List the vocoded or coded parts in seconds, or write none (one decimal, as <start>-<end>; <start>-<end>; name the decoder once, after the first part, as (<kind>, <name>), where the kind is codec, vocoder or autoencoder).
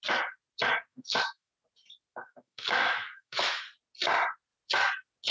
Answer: 0.9-1.5 (autoencoder, DAC-VAE); 2.1-3.6